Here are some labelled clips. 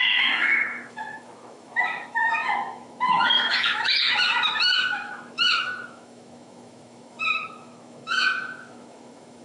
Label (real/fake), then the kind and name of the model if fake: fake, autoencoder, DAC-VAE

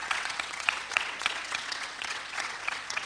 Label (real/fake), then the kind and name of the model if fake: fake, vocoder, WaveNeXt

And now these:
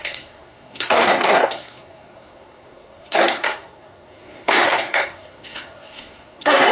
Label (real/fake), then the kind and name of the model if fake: fake, codec, SNAC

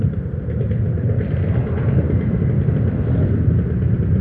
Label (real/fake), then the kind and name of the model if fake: real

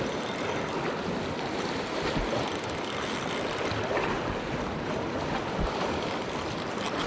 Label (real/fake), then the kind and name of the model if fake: real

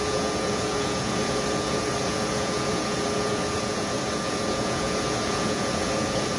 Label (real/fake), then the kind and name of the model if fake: fake, vocoder, Vocos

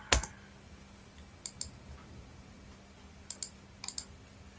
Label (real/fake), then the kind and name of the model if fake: real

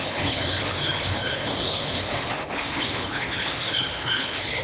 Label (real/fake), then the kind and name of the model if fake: fake, codec, HILCodec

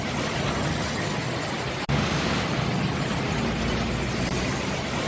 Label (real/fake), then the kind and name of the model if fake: real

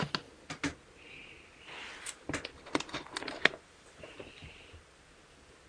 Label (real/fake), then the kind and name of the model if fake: real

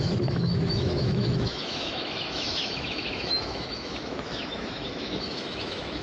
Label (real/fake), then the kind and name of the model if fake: fake, autoencoder, DAC-VAE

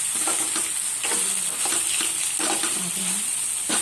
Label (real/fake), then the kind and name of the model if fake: real